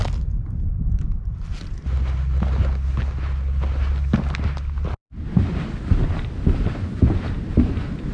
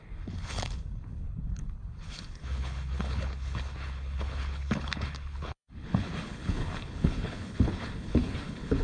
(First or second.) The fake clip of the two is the second